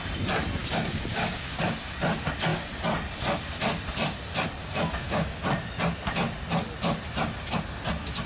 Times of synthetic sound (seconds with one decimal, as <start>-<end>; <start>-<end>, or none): 0.6-1.6; 4.6-5.4